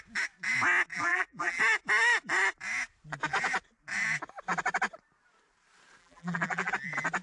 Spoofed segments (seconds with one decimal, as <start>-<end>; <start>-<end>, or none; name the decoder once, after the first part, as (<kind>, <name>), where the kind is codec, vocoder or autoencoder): 0.9-1.6 (vocoder, BigVGAN v2); 6.0-6.7